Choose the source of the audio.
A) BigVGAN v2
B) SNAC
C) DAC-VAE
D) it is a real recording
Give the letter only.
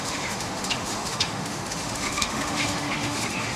C